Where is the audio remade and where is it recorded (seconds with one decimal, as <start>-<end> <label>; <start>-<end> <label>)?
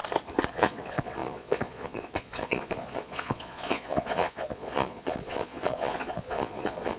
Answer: 0.0-0.5 recorded; 0.5-7.0 remade